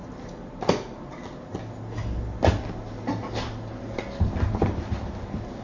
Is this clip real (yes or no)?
yes